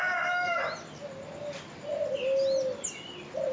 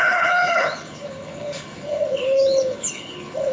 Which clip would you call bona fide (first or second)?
first